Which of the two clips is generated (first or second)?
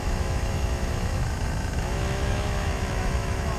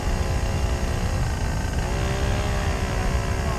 first